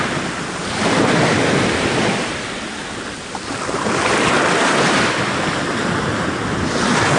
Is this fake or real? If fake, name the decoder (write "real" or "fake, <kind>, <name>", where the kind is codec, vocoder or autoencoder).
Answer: real